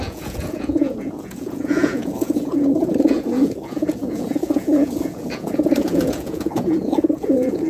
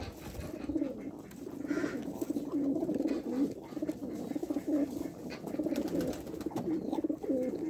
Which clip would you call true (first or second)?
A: second